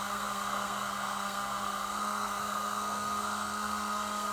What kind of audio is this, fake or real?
fake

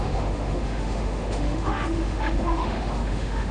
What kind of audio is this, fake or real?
fake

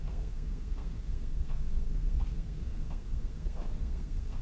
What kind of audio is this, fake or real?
fake